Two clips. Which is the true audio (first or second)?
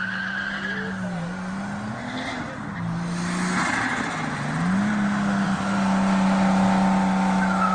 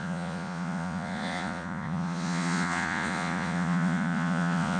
first